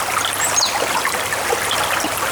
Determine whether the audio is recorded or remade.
recorded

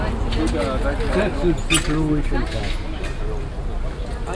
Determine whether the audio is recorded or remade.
recorded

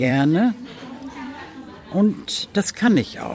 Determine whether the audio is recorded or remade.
remade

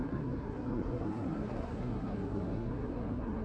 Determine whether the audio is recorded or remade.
remade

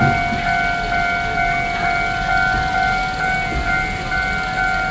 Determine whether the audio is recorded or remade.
recorded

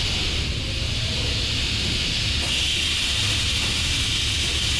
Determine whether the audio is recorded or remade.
recorded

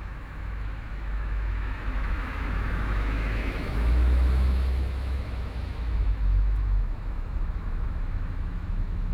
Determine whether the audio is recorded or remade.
remade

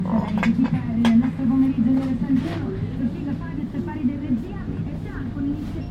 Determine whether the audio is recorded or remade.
recorded